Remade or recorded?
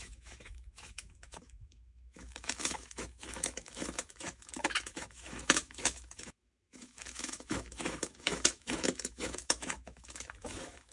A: remade